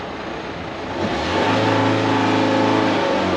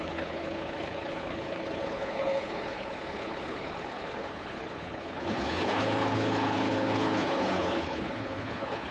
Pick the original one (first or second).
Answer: first